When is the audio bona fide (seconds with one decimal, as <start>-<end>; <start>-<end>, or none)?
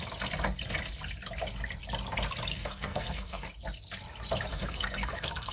0.0-2.5; 3.5-4.5